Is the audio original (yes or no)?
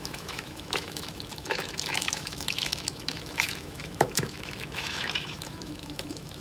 no